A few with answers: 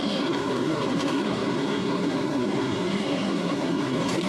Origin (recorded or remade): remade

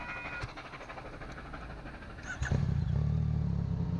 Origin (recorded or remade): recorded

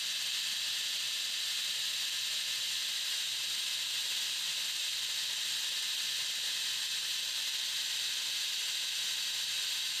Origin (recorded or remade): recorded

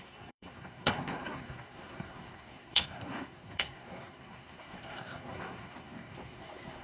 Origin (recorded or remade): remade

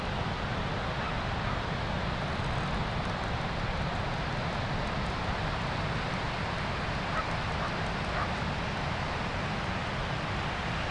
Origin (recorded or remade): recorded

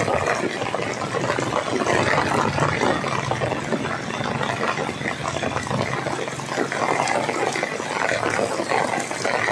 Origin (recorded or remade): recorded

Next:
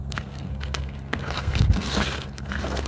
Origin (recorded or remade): remade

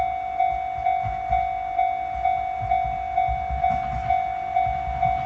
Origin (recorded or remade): recorded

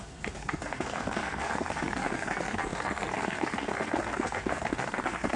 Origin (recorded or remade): remade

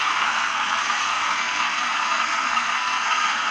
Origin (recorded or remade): remade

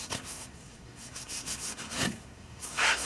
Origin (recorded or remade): remade